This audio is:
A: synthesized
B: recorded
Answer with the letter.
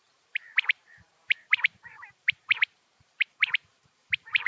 A